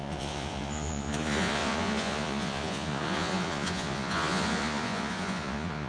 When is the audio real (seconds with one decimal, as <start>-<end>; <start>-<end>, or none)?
none